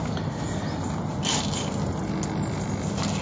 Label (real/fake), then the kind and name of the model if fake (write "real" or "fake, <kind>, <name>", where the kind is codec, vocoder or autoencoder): real